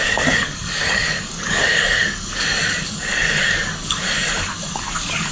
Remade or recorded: remade